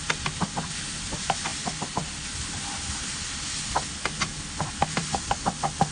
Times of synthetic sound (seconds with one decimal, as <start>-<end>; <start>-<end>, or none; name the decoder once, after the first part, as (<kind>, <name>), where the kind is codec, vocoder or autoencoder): none